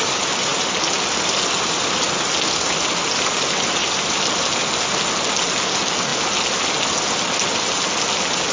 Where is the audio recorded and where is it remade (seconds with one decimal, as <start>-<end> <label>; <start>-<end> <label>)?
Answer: 0.0-0.5 recorded; 0.5-4.6 remade; 4.6-8.5 recorded